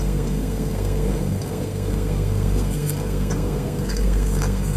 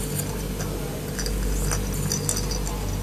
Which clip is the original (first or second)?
second